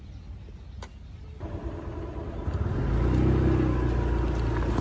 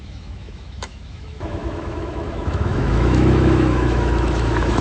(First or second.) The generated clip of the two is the second